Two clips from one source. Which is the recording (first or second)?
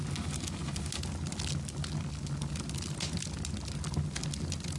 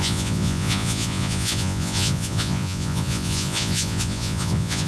first